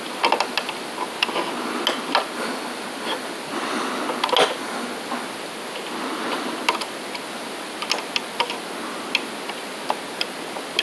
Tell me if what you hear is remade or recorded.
recorded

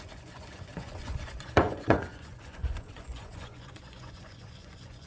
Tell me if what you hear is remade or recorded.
remade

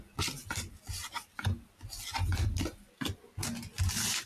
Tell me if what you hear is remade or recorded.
recorded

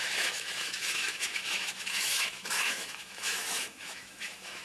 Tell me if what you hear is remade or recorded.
remade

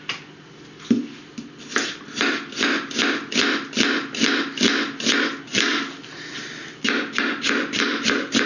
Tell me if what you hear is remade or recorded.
recorded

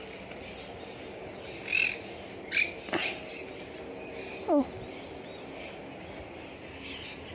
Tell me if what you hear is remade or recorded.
recorded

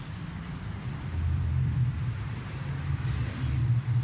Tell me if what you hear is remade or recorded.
remade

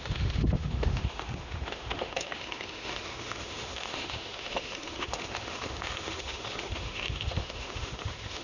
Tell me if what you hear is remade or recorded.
remade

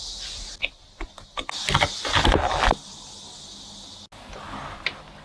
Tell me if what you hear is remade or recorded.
recorded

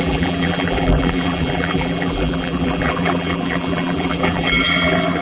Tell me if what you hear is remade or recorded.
remade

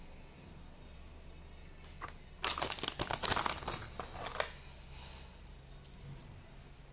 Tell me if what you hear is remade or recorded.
recorded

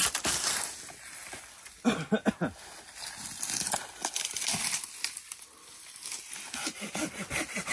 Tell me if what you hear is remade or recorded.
recorded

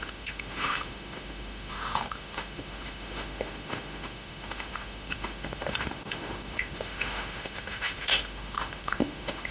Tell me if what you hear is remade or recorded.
remade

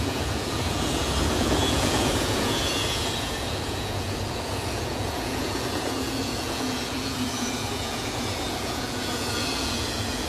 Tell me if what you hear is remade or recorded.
remade